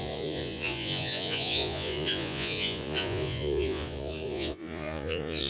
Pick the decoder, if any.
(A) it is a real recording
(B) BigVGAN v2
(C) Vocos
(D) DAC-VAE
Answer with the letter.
C